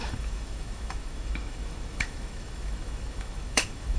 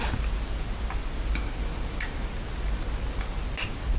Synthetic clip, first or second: first